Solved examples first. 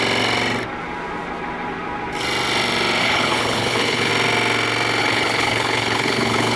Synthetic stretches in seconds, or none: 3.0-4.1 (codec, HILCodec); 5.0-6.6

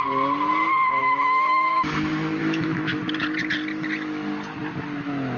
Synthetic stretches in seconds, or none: 1.0-1.9 (autoencoder, DAC-VAE); 2.4-3.0